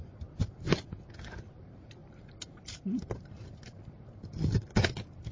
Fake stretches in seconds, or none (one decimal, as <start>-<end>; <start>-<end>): 2.0-3.8